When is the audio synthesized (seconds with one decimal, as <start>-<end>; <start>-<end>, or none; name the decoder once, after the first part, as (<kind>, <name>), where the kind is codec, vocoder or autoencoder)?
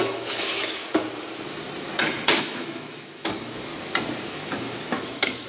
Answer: 0.0-0.8 (autoencoder, DAC-VAE); 2.4-3.7; 4.3-5.5